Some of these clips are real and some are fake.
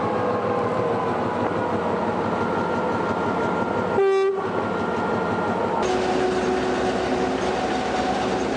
real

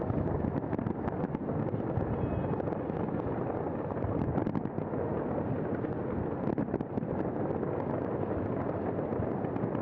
real